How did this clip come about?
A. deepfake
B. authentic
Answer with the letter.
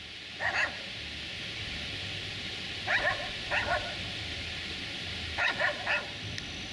B